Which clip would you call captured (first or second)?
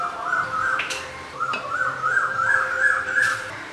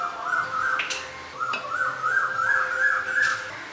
second